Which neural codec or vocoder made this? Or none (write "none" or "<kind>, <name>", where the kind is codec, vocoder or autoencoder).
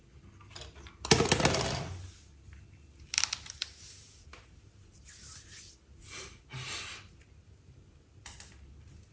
none